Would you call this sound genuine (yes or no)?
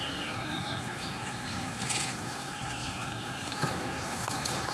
no